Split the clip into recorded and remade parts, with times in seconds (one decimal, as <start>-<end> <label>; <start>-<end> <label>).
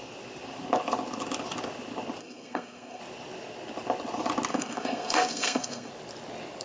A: 0.0-2.2 recorded; 2.2-3.0 remade; 3.0-4.5 recorded; 4.5-5.9 remade; 5.9-6.6 recorded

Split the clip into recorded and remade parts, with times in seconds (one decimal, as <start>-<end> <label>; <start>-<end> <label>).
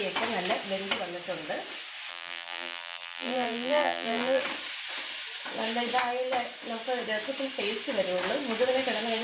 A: 0.0-2.1 recorded; 2.1-4.4 remade; 4.4-9.2 recorded